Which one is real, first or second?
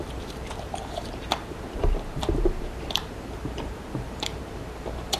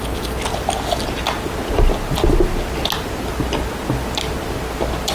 second